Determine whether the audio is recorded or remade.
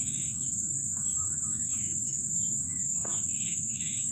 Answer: remade